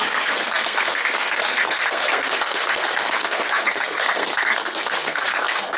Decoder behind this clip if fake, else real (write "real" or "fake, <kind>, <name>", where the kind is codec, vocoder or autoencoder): fake, codec, SNAC